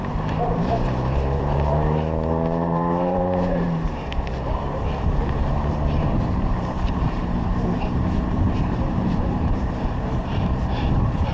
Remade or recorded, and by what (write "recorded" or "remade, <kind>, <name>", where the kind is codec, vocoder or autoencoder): remade, vocoder, BigVGAN v2